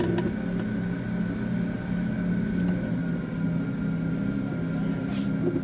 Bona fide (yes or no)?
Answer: yes